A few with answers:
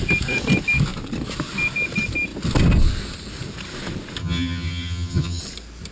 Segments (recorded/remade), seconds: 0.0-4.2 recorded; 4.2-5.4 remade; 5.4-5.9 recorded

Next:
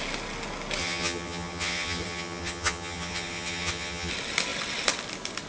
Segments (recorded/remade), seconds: 0.0-0.8 recorded; 0.8-4.1 remade; 4.1-5.5 recorded